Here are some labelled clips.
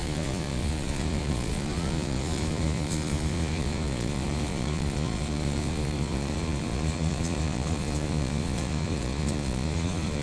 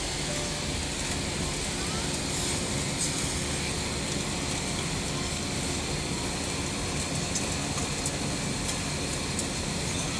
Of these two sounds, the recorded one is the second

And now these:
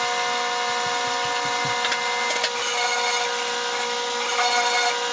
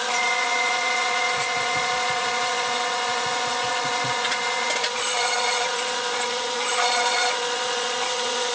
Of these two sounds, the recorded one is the first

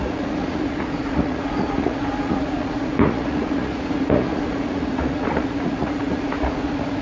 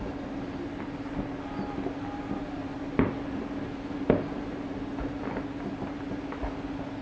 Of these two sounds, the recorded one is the second